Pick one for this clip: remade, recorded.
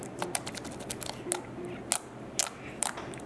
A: recorded